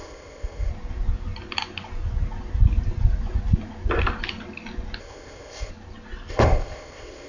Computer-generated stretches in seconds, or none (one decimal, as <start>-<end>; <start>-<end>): 0.0-0.7; 5.0-5.7; 6.3-7.3